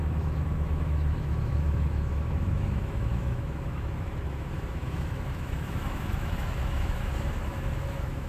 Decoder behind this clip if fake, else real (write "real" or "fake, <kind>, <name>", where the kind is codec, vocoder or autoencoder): fake, autoencoder, DAC-VAE